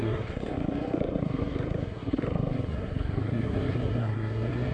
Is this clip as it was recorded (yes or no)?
no